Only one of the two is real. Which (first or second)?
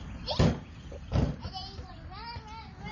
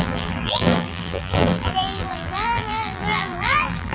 first